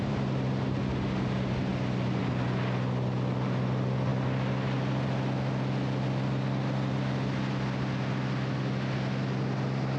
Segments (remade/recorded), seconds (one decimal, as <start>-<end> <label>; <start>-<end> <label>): 0.0-10.0 recorded